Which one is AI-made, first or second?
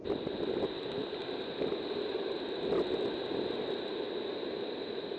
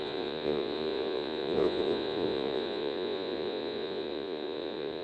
second